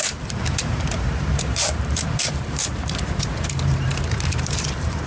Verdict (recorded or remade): remade